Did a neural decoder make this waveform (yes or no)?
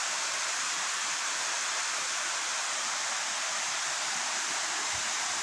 yes